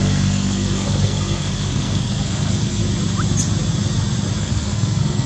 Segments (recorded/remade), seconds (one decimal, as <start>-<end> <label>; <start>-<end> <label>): 0.0-2.8 remade; 2.8-4.4 recorded; 4.4-5.3 remade